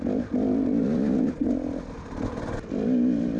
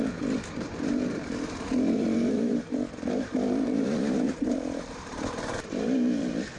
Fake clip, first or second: second